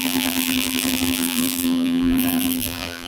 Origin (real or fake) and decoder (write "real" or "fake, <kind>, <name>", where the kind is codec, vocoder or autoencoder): fake, vocoder, BigVGAN v2